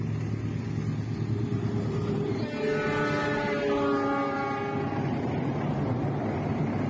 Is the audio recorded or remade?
recorded